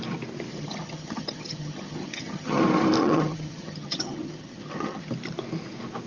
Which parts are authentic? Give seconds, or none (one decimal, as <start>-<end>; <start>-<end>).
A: 0.0-0.5; 2.6-3.0; 5.1-6.1